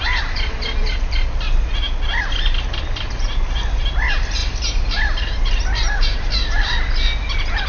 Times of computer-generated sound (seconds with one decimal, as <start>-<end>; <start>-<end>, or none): none